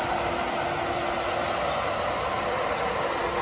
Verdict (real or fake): real